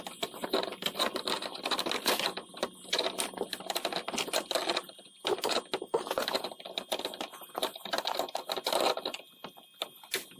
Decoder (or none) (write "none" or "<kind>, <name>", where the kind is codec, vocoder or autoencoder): none